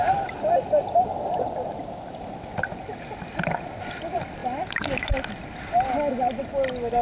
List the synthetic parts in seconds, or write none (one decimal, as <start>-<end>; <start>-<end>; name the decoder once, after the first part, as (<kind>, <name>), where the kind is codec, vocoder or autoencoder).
none